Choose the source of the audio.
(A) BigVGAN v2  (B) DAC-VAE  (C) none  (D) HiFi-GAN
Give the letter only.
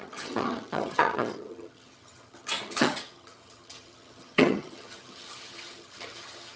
D